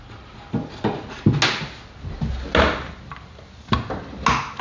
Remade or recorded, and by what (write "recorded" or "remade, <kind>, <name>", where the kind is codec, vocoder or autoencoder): recorded